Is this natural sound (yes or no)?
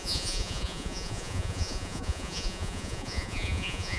no